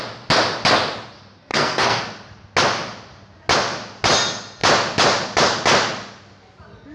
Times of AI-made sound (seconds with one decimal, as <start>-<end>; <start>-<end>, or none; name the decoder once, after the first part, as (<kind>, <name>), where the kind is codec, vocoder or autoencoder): 1.5-2.0 (codec, SNAC)